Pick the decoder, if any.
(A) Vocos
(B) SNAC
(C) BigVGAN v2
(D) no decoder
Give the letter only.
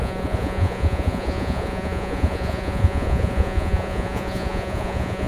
A